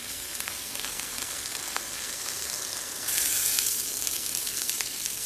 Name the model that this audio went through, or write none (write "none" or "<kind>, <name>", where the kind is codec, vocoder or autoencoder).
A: codec, SNAC